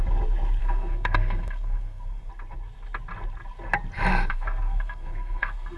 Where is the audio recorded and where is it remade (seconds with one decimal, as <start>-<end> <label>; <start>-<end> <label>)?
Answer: 0.0-0.6 recorded; 0.6-2.3 remade; 2.3-4.1 recorded; 4.1-5.8 remade